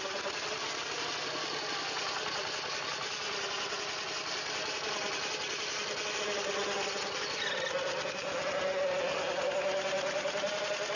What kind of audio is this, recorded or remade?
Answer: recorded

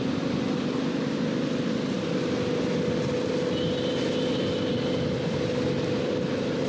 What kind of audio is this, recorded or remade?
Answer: recorded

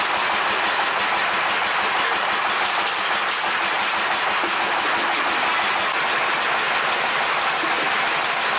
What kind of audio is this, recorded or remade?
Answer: recorded